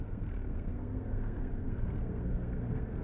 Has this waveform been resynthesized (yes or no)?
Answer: yes